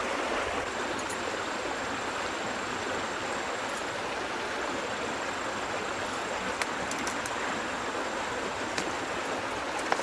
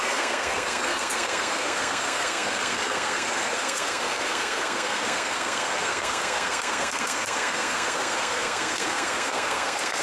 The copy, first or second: second